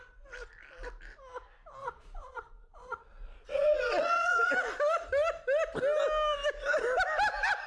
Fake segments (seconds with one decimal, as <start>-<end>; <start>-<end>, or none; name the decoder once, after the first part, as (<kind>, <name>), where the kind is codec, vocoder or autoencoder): 1.8-4.5 (vocoder, Vocos)